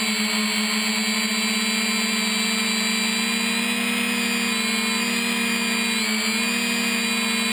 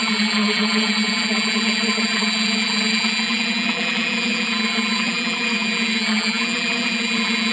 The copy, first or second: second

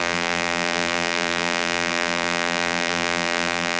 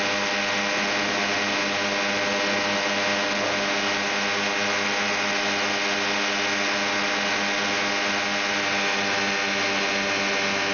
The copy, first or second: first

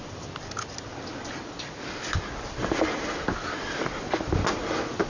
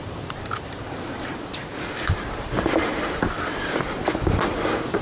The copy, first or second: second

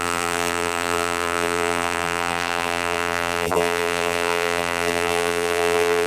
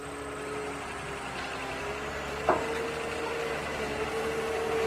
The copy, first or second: first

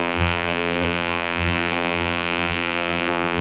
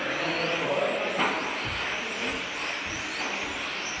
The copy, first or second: first